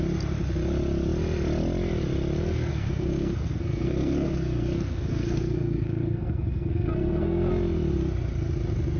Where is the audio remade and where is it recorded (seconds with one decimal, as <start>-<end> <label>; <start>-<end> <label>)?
0.0-2.7 recorded; 2.7-7.5 remade; 7.5-9.0 recorded